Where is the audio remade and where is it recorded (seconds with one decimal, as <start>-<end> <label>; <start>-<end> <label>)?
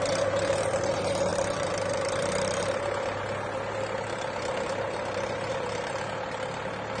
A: 0.0-7.0 recorded